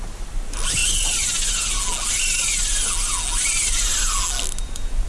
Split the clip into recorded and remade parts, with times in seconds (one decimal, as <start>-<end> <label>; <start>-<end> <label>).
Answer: 0.0-5.1 recorded

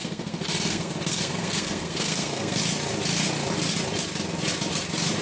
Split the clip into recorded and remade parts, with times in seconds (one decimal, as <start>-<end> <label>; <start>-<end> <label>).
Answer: 0.0-2.6 remade; 2.6-5.2 recorded

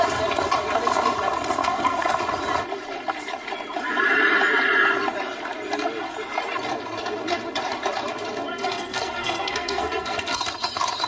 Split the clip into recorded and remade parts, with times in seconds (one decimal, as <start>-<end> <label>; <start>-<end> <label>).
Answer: 0.0-1.6 recorded; 1.6-2.2 remade; 2.2-8.5 recorded; 8.5-10.4 remade; 10.4-11.1 recorded

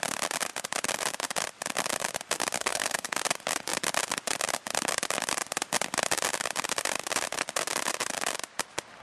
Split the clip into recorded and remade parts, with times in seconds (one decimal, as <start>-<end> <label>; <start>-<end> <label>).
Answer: 0.0-2.6 recorded; 2.6-3.2 remade; 3.2-9.0 recorded

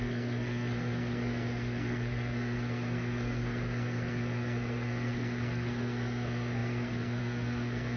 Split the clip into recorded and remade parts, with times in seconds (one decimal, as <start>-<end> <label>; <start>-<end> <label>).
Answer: 0.0-8.0 remade